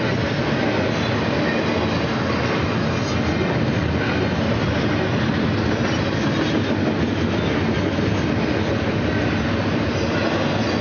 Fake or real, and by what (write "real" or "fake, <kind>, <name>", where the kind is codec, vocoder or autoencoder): real